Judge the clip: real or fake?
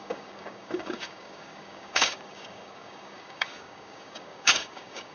fake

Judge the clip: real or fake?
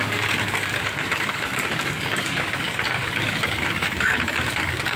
fake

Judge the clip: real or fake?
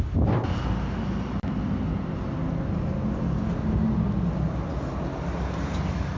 real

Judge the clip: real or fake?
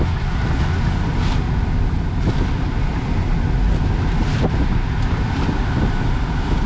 real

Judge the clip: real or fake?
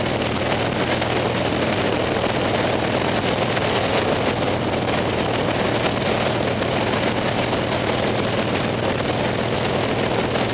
real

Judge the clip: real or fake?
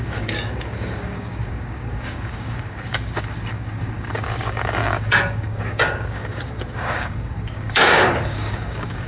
fake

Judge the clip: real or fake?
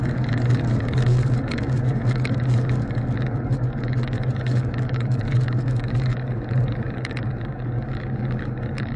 fake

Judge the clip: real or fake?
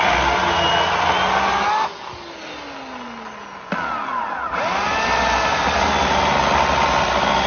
real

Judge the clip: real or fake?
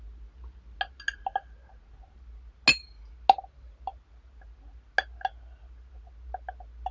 real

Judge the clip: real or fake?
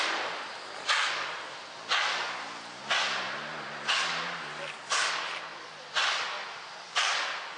real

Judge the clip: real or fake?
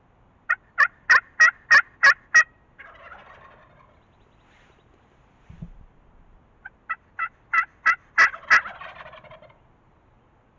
real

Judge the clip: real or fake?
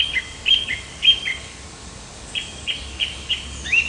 fake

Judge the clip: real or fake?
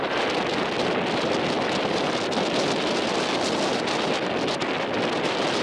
real